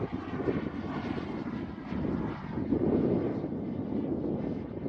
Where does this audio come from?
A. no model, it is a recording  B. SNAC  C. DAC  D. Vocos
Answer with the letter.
A